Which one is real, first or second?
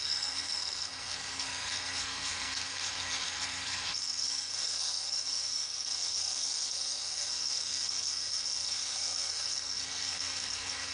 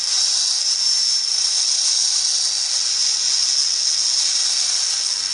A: second